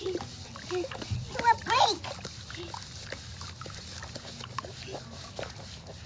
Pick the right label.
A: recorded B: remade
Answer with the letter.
A